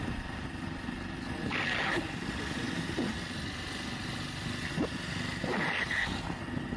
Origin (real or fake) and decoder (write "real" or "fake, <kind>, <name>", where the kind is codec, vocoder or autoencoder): real